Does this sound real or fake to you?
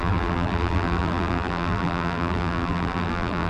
fake